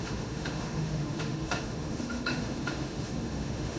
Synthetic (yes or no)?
yes